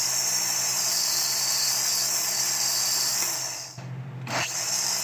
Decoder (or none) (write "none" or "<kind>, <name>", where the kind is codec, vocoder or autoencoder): vocoder, BigVGAN v2